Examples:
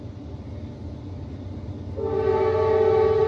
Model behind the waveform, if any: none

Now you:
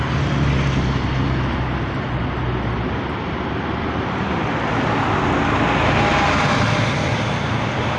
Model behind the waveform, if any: none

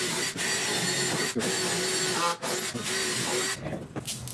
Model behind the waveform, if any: none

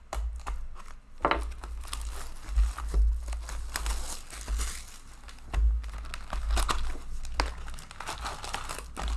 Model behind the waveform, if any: none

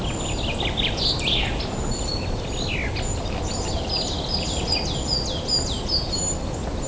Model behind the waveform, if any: none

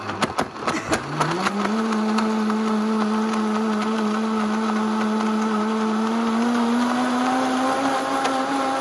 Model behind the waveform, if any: none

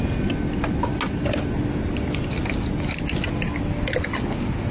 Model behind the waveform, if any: none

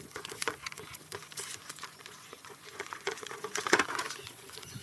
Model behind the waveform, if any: vocoder, Vocos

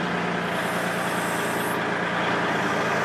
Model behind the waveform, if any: none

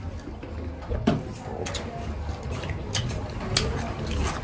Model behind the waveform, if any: none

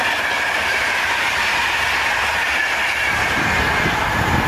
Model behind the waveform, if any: vocoder, BigVGAN v2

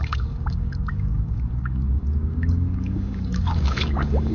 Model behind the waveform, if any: codec, DAC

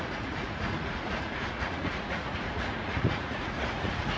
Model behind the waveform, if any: vocoder, Vocos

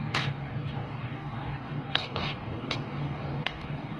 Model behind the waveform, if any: codec, DAC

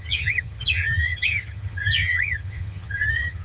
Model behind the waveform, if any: vocoder, HiFi-GAN